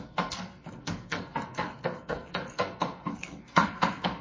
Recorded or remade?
remade